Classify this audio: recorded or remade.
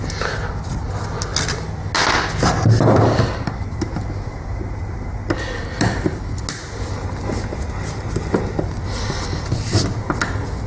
recorded